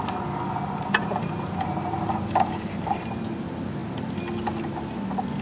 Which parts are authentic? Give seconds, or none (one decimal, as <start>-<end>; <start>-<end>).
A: 0.0-0.8; 3.1-5.4